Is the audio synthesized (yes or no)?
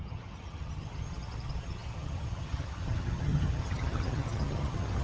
yes